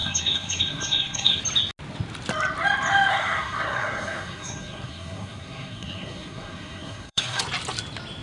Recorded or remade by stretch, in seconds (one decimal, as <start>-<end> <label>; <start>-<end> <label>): 0.0-1.4 remade; 1.4-3.1 recorded; 3.1-7.4 remade; 7.4-8.2 recorded